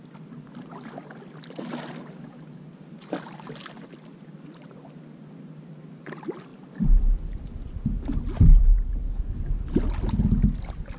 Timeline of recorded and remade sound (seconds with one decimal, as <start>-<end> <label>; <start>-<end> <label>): 0.0-11.0 recorded

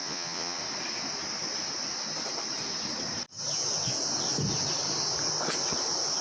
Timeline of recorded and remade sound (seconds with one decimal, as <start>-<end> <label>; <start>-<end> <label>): 0.0-0.6 remade; 0.6-6.2 recorded

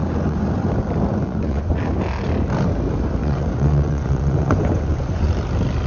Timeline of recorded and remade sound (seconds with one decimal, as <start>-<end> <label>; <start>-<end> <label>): 0.0-0.7 remade; 0.7-1.1 recorded; 1.1-1.8 remade; 1.8-3.2 recorded; 3.2-5.3 remade; 5.3-5.9 recorded

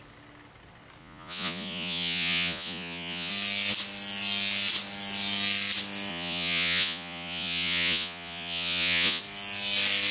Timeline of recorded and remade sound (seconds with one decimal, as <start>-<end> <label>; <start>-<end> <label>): 0.0-1.0 recorded; 1.0-3.3 remade; 3.3-6.1 recorded; 6.1-9.2 remade; 9.2-10.1 recorded

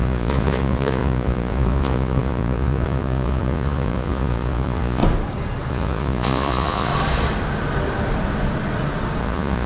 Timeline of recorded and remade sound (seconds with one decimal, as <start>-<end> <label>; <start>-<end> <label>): 0.0-5.0 remade; 5.0-5.7 recorded; 5.7-6.9 remade; 6.9-9.2 recorded; 9.2-9.7 remade

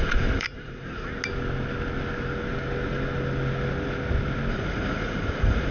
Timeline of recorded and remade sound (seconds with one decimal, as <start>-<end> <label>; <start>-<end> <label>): 0.0-1.1 remade; 1.1-4.5 recorded; 4.5-5.7 remade

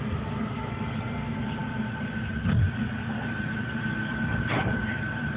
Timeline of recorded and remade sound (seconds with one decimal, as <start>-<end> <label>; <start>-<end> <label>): 0.0-5.4 recorded

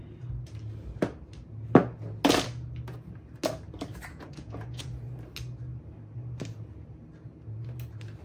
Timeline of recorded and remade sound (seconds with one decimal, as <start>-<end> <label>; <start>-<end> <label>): 0.0-4.1 recorded; 4.1-4.9 remade; 4.9-8.2 recorded